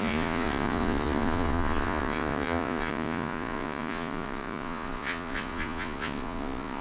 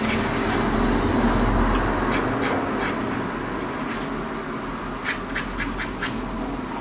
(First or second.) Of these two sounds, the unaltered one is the second